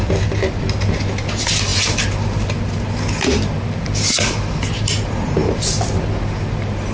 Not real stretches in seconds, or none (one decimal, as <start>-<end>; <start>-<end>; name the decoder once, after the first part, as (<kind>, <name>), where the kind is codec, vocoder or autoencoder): none